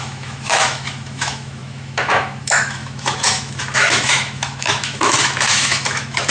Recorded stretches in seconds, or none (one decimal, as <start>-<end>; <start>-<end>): none